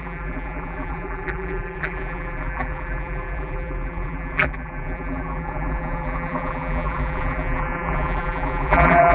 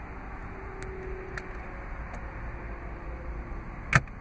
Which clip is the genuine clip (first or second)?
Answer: second